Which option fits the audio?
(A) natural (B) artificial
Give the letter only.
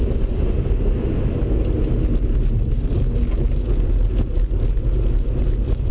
A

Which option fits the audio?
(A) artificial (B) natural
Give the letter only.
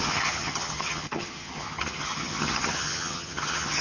A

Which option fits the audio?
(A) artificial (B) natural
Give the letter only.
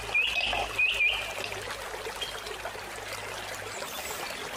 B